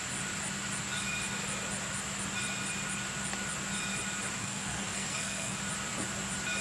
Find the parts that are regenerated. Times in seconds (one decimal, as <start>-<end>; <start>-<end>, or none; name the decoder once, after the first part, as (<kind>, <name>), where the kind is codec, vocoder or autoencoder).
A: 4.4-5.6 (codec, SNAC)